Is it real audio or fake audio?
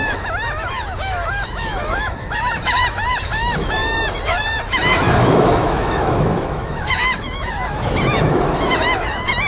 fake